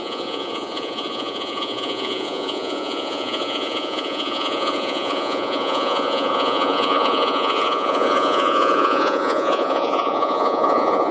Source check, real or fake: fake